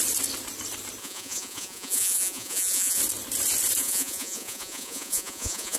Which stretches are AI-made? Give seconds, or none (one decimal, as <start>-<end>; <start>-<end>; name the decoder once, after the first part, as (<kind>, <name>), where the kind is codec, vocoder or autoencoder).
1.0-3.0 (vocoder, Vocos); 3.8-5.8